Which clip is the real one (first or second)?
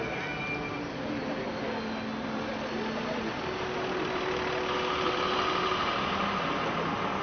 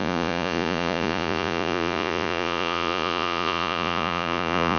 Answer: first